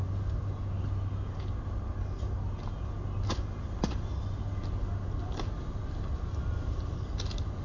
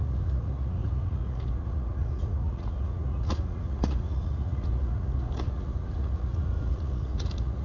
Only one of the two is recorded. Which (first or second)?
first